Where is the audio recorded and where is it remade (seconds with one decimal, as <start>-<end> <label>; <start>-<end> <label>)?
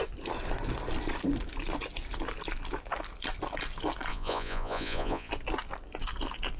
0.0-4.1 recorded; 4.1-5.3 remade; 5.3-6.6 recorded